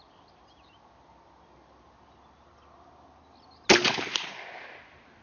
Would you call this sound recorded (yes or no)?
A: yes